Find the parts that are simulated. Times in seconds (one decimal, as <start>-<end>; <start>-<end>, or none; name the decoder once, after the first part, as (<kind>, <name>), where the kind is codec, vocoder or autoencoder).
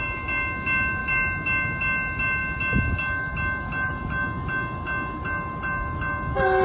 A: none